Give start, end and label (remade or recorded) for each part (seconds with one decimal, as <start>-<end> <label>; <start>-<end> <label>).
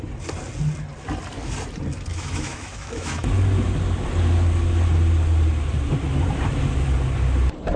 0.0-2.1 recorded; 2.1-3.3 remade; 3.3-7.8 recorded